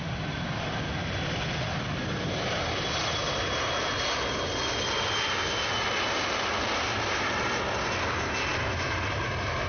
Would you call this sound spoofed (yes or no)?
no